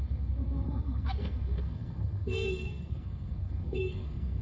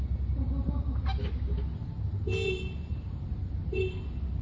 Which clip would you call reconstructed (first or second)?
first